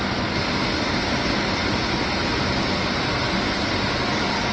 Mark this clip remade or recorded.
recorded